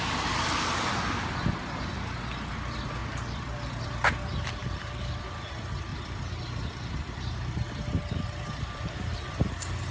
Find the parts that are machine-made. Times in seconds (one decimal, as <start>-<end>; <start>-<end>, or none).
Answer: 3.0-3.8; 4.6-5.1; 5.9-9.4